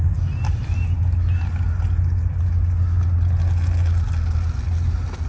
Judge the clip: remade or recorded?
recorded